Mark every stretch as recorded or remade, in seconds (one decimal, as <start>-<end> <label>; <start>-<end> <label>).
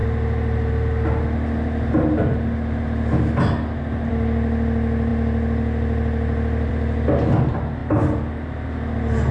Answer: 0.0-9.3 recorded